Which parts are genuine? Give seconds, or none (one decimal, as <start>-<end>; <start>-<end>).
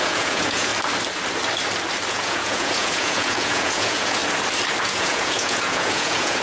0.7-2.1; 4.2-4.8